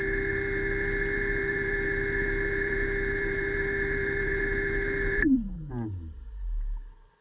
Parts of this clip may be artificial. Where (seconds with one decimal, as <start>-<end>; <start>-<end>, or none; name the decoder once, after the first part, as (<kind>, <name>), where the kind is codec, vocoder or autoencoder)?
1.4-5.7 (vocoder, BigVGAN v2)